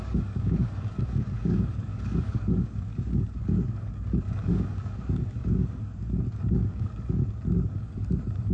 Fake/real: fake